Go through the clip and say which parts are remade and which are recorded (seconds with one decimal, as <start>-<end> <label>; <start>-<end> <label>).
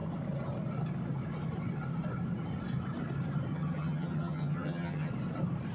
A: 0.0-3.5 recorded; 3.5-5.1 remade; 5.1-5.7 recorded